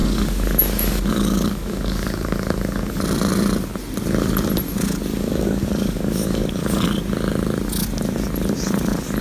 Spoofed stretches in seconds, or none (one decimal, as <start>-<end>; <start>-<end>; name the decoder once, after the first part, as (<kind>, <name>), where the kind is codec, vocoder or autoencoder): 0.0-3.0 (codec, DAC); 5.1-6.8